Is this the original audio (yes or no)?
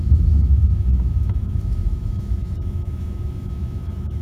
no